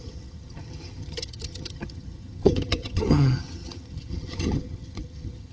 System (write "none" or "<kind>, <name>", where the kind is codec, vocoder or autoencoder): vocoder, HiFi-GAN